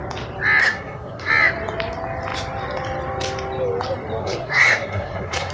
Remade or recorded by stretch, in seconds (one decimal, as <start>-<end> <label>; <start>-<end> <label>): 0.0-0.6 recorded; 0.6-1.3 remade; 1.3-4.2 recorded; 4.2-5.5 remade